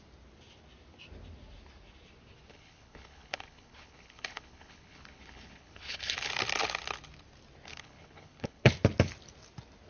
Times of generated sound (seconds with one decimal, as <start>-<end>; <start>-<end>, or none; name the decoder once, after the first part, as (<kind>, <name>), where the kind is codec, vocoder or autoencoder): 2.5-6.3 (codec, HILCodec); 7.7-8.7